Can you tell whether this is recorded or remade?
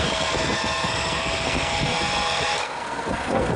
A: remade